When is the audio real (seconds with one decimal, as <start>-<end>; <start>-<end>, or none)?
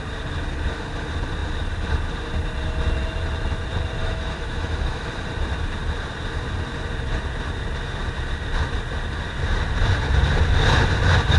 0.0-4.0; 5.1-11.4